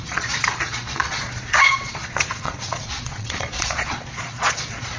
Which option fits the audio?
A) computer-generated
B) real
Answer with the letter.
A